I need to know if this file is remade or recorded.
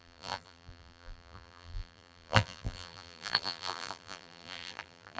remade